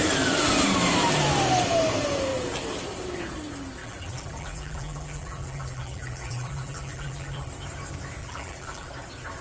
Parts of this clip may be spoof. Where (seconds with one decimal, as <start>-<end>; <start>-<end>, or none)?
3.8-7.5; 8.2-8.9